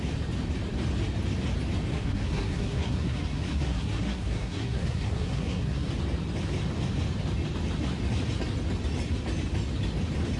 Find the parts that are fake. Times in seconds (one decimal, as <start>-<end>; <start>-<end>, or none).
1.9-5.9